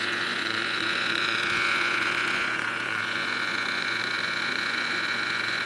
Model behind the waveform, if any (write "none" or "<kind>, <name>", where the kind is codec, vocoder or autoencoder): vocoder, Vocos